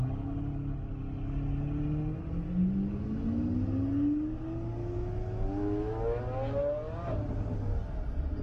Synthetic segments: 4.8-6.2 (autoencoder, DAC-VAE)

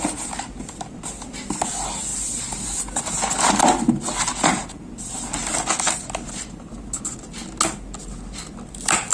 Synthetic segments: none

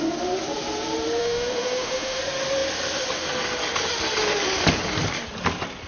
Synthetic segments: 1.2-2.2 (autoencoder, DAC-VAE)

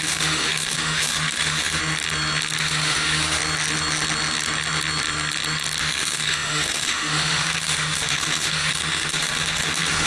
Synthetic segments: 0.0-1.8 (autoencoder, DAC-VAE); 2.6-3.4; 5.8-10.1

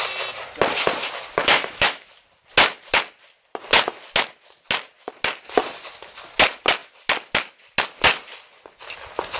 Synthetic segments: 1.4-2.1 (autoencoder, DAC-VAE)